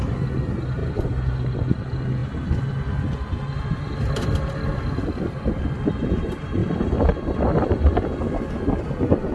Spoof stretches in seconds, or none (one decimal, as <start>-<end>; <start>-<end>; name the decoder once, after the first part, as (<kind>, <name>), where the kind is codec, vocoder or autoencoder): 6.6-7.1 (vocoder, BigVGAN v2)